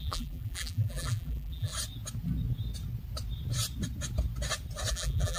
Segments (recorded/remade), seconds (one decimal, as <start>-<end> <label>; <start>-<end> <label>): 0.0-1.7 remade; 1.7-4.9 recorded; 4.9-5.4 remade

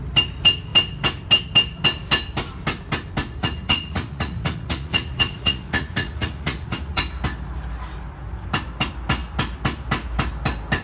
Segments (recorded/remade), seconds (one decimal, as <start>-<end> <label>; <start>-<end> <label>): 0.0-3.4 recorded; 3.4-7.0 remade; 7.0-10.8 recorded

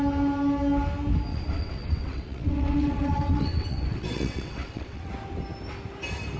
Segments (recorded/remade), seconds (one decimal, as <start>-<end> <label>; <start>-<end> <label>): 0.0-1.3 recorded; 1.3-5.1 remade; 5.1-6.4 recorded